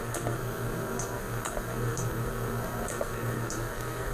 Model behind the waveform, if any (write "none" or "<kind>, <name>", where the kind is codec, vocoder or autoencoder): codec, SNAC